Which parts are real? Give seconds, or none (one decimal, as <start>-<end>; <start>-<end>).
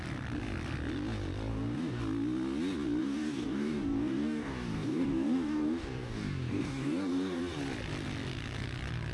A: 0.0-1.5; 2.0-3.0; 7.4-9.1